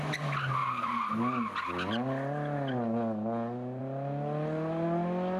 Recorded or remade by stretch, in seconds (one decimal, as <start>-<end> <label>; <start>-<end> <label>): 0.0-5.4 recorded